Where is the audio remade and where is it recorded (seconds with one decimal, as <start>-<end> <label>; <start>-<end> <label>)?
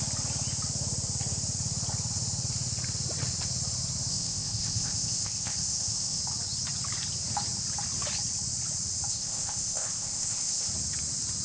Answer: 0.0-4.1 recorded; 4.1-6.2 remade; 6.2-9.1 recorded; 9.1-10.7 remade; 10.7-11.4 recorded